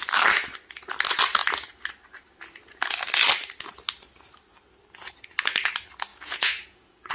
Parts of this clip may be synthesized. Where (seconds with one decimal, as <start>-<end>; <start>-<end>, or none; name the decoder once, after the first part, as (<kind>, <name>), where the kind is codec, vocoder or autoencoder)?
6.1-7.1 (vocoder, Vocos)